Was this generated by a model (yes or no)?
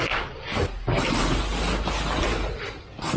no